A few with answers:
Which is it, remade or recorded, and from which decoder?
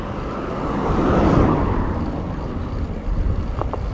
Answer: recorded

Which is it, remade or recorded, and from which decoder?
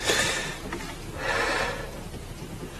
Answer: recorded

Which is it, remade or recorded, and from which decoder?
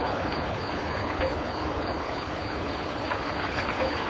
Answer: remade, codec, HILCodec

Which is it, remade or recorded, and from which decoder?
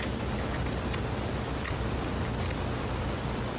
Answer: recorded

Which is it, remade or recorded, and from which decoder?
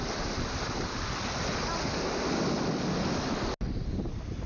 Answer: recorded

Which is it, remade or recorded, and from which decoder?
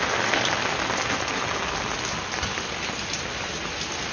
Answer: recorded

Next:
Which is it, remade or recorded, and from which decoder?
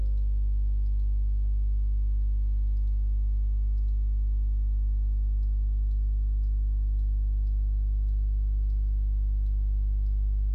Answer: recorded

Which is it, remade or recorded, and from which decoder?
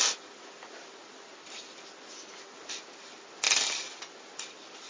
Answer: recorded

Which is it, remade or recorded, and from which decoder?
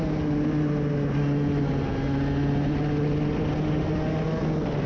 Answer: recorded